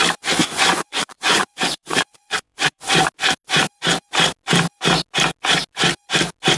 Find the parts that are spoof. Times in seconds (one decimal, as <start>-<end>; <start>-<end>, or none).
0.4-3.0